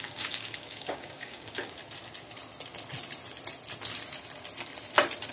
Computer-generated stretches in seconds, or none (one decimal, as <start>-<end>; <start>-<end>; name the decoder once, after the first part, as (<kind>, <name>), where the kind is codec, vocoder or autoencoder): 0.0-1.8 (codec, DAC)